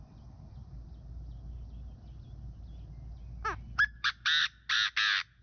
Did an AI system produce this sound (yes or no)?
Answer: no